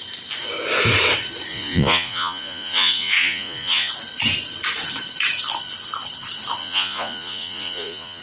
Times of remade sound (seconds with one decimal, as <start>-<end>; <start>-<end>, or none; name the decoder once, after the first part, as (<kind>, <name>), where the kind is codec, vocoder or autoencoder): 1.5-3.9 (vocoder, Vocos); 6.6-8.2